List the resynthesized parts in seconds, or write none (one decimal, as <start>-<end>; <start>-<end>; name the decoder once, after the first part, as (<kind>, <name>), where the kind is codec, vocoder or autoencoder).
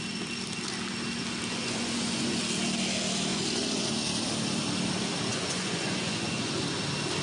1.5-2.4 (vocoder, Vocos); 3.3-3.9; 5.3-6.5